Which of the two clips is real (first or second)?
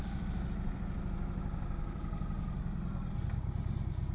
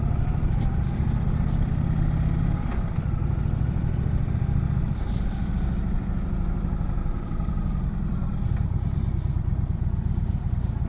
first